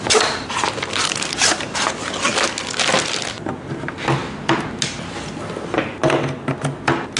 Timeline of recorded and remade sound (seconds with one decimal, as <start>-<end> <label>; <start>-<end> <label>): 0.0-7.2 recorded